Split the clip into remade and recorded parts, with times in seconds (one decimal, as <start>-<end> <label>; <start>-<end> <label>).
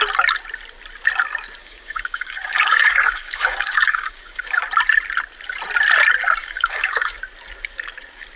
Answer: 0.0-1.6 recorded; 1.6-4.6 remade; 4.6-6.4 recorded; 6.4-7.2 remade; 7.2-8.4 recorded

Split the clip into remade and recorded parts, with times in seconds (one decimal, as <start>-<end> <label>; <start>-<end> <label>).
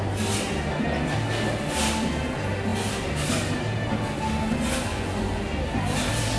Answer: 0.0-4.9 recorded; 4.9-5.4 remade; 5.4-6.4 recorded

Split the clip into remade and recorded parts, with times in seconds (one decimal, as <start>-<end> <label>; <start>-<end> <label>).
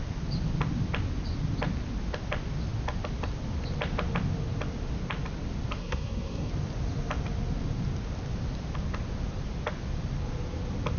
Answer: 0.0-5.8 recorded; 5.8-6.5 remade; 6.5-11.0 recorded